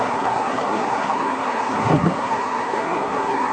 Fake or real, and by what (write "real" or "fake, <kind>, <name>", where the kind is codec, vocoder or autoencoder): fake, codec, SNAC